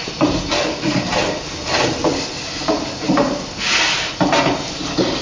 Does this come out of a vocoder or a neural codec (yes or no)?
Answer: no